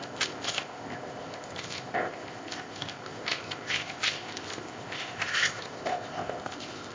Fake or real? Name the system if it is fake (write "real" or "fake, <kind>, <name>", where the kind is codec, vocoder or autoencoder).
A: fake, codec, ZipCodec